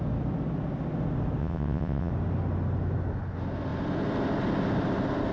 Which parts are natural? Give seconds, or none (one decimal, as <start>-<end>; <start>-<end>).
0.0-1.4; 2.1-5.3